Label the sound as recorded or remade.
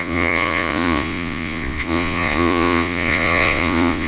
remade